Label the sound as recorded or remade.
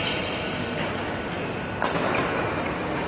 recorded